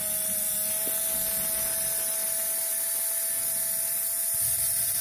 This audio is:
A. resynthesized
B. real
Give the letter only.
B